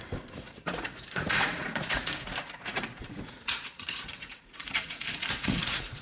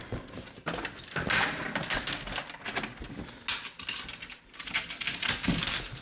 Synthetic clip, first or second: first